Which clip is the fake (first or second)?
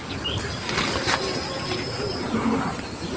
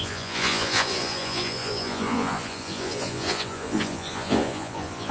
second